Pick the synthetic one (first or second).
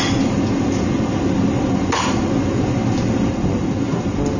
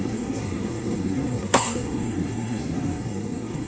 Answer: second